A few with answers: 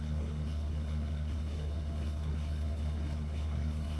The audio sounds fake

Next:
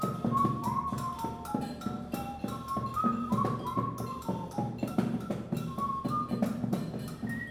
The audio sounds real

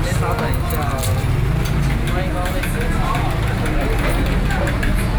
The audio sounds real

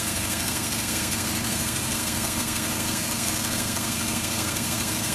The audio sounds fake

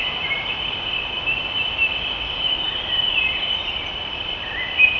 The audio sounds fake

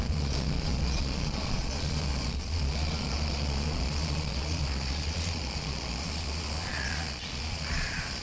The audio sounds fake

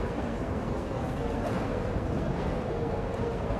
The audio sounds fake